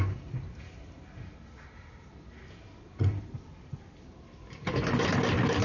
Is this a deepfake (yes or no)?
no